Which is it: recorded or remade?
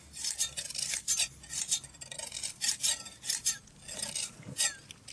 recorded